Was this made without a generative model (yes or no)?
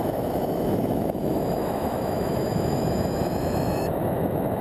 no